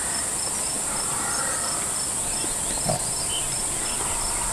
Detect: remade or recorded recorded